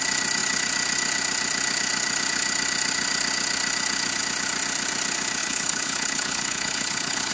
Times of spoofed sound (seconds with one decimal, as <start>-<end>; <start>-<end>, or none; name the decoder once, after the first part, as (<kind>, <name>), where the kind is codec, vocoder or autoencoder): 5.4-7.3 (codec, HILCodec)